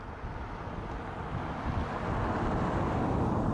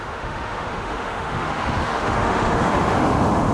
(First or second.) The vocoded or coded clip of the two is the second